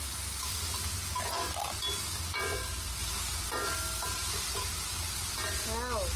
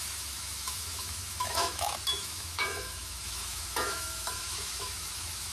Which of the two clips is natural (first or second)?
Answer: first